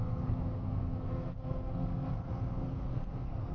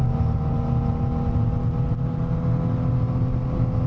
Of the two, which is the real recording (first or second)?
second